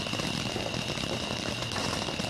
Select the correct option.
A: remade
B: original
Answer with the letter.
B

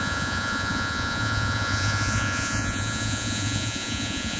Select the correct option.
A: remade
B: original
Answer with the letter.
A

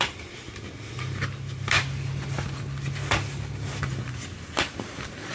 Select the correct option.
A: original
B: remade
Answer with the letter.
A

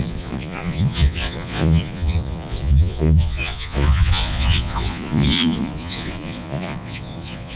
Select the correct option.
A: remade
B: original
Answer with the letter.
A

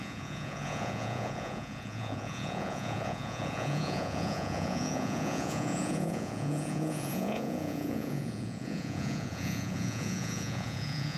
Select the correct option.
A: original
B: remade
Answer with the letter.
B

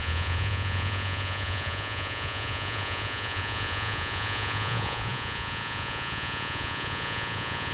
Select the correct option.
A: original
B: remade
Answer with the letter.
B